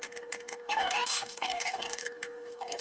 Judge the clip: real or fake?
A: fake